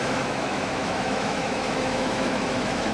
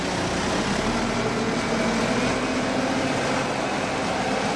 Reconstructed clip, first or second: first